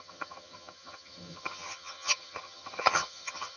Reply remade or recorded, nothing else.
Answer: remade